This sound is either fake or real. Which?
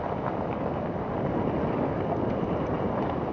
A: real